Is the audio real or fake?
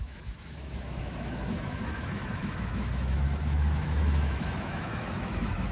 fake